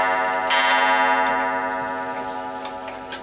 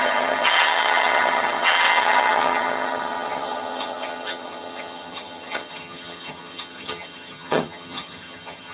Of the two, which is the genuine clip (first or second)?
first